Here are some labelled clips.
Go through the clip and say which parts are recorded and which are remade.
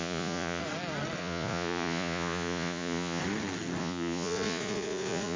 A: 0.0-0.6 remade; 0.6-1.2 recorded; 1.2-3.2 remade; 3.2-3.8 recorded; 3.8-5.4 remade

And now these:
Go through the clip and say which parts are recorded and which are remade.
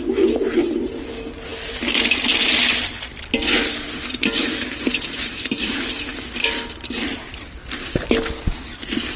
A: 0.0-9.2 recorded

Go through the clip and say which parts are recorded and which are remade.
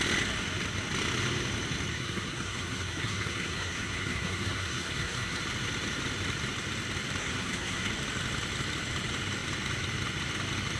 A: 0.0-1.9 recorded; 1.9-5.4 remade; 5.4-7.2 recorded; 7.2-7.9 remade; 7.9-10.8 recorded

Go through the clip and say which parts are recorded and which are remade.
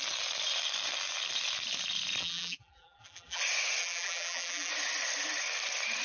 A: 0.0-2.2 recorded; 2.2-3.4 remade; 3.4-3.8 recorded; 3.8-4.7 remade; 4.7-6.0 recorded